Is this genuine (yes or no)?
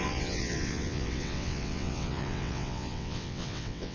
no